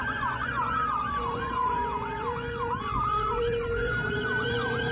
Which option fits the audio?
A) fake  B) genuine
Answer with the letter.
A